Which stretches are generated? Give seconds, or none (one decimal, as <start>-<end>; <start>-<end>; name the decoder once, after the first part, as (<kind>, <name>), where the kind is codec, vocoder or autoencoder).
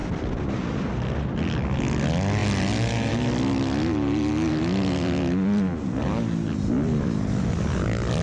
none